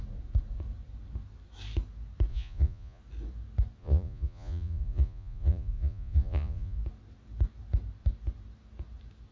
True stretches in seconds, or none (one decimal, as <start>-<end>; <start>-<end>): 0.0-2.3; 3.0-3.8; 6.8-9.3